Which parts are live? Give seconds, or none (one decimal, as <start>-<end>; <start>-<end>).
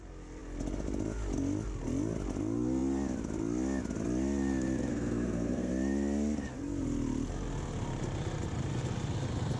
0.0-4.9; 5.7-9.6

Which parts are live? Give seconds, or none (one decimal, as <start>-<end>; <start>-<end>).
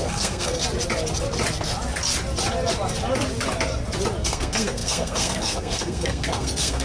0.6-4.2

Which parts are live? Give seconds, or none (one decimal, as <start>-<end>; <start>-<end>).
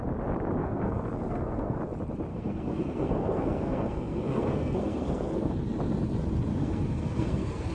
0.0-0.6; 1.8-2.3; 5.5-6.5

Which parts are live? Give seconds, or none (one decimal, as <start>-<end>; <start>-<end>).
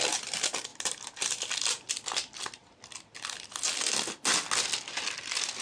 0.0-5.6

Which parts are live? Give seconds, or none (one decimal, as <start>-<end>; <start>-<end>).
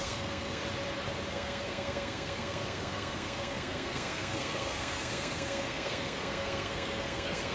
0.6-1.3